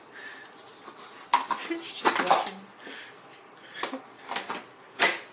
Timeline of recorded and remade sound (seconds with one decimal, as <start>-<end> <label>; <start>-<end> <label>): 0.0-5.3 recorded